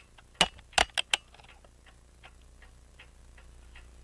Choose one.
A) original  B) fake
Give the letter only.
A